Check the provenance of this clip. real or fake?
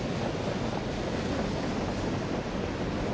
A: real